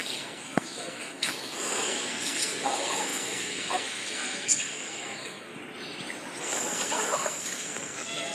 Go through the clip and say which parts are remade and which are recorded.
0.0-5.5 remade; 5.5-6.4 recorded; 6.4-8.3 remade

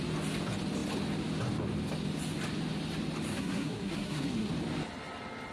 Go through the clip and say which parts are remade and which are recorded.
0.0-3.3 recorded; 3.3-4.5 remade; 4.5-5.5 recorded

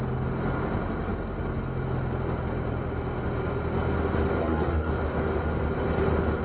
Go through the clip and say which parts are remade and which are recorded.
0.0-4.4 recorded; 4.4-4.9 remade; 4.9-6.4 recorded